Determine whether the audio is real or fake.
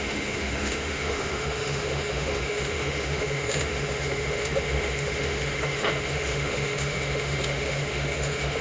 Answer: fake